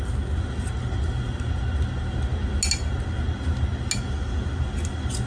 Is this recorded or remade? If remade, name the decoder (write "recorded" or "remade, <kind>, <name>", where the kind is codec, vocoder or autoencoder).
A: recorded